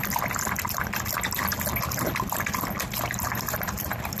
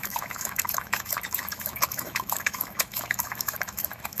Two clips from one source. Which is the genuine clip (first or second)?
first